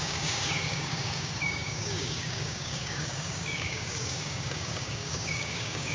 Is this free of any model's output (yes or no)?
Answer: no